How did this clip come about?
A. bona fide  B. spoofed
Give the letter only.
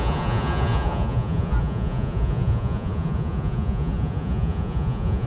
B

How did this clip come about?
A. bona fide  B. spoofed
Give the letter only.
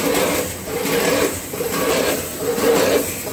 A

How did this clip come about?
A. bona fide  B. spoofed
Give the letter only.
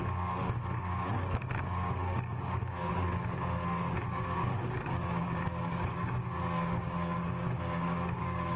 B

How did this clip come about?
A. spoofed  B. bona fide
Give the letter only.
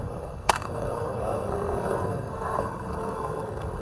A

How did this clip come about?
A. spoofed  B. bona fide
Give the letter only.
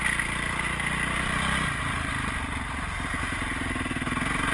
B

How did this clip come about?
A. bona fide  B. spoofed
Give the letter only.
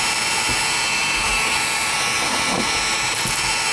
A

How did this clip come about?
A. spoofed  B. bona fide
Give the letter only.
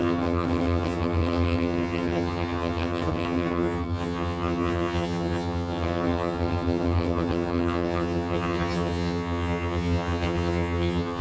A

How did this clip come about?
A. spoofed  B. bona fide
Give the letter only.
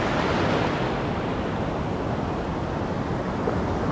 B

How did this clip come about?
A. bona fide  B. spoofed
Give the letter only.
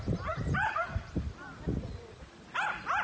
B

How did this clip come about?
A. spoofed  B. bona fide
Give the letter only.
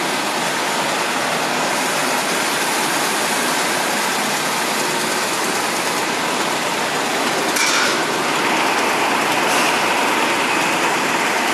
B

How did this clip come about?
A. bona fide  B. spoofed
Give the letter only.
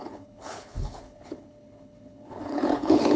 B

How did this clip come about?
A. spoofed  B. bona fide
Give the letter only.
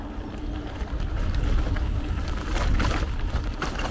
B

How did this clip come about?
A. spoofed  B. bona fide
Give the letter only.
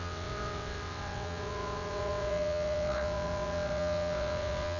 A